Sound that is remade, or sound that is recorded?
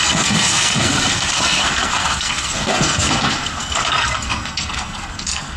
remade